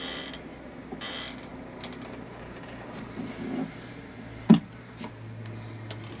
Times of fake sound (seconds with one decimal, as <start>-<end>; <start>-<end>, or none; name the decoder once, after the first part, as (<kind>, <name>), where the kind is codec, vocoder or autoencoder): 1.5-4.1 (vocoder, BigVGAN v2); 4.5-5.1